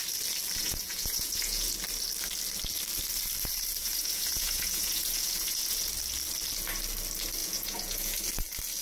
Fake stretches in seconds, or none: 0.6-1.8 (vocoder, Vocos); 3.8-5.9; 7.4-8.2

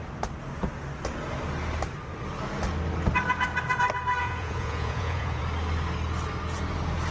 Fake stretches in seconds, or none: 4.2-5.4 (vocoder, Vocos)

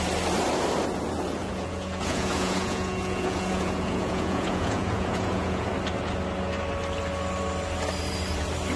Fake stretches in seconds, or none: 1.4-5.7 (vocoder, Vocos)

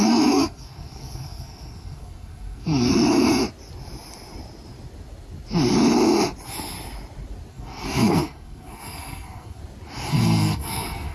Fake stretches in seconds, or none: 0.0-3.4 (codec, SNAC); 7.5-9.6; 10.1-11.1

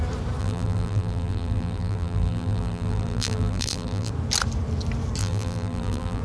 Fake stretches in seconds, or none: 0.4-4.1 (vocoder, BigVGAN v2); 5.2-6.2